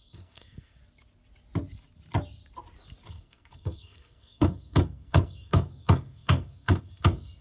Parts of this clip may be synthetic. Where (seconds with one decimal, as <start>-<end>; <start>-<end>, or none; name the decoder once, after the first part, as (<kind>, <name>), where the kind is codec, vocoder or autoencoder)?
0.0-0.8 (codec, SNAC); 3.1-7.4